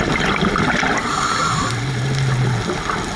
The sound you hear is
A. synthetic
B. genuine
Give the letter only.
B